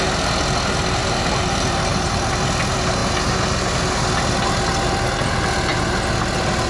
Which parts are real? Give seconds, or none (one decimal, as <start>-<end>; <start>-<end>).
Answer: 0.0-1.0; 2.3-6.7